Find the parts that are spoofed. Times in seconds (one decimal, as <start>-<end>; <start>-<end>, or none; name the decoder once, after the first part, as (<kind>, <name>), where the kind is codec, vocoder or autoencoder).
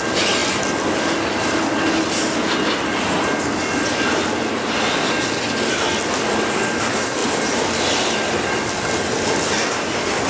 none